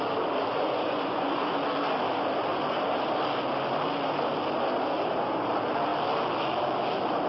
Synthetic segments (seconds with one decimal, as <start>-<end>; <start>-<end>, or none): 0.5-1.5